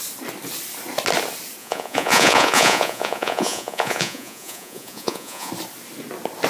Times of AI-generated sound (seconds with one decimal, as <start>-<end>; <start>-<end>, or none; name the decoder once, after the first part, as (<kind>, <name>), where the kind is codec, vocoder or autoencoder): 1.6-5.5 (vocoder, Vocos)